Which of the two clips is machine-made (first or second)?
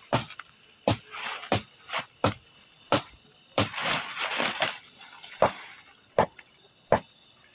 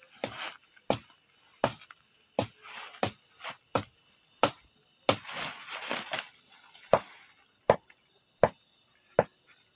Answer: first